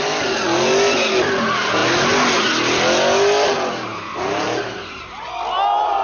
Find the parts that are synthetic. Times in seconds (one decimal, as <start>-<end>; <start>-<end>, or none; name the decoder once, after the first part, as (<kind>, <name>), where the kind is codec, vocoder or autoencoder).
none